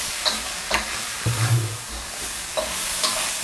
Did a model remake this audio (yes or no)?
yes